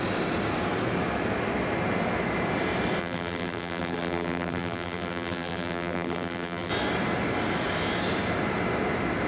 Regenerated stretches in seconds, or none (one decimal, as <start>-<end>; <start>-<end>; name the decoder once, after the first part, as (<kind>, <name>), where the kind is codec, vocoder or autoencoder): 3.0-6.7 (vocoder, BigVGAN v2)